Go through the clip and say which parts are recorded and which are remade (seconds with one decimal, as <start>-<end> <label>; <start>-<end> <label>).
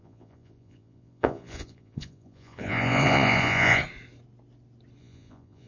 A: 0.0-3.8 remade; 3.8-5.0 recorded; 5.0-5.7 remade